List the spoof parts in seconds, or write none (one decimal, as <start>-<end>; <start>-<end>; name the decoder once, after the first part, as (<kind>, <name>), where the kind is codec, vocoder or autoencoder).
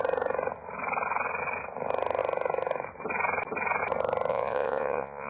4.3-5.3 (vocoder, Vocos)